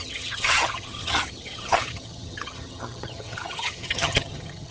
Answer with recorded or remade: remade